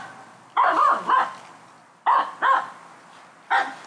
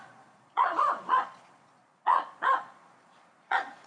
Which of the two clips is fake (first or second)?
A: second